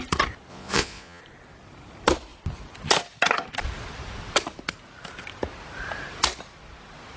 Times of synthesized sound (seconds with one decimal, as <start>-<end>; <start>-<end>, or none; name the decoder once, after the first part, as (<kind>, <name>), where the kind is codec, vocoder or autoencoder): 0.5-1.2 (vocoder, Vocos)